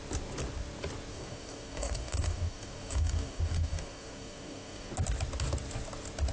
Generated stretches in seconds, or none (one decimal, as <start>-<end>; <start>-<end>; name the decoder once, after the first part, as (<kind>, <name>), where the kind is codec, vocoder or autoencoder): 1.1-4.9 (codec, DAC)